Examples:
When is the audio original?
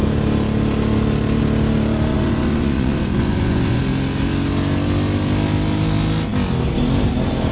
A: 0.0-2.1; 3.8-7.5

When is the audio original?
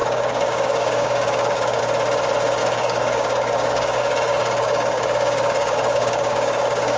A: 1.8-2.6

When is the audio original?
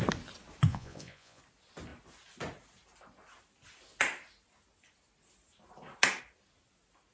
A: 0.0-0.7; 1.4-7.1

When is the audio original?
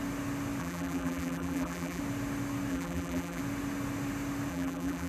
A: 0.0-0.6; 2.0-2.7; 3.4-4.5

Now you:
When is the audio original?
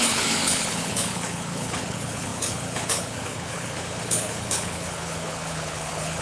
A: none